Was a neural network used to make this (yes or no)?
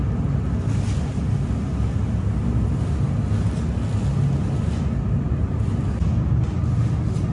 no